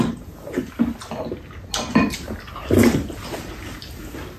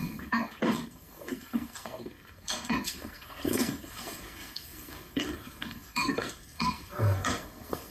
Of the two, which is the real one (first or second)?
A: first